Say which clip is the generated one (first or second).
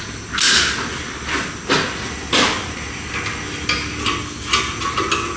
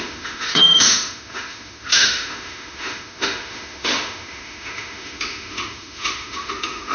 second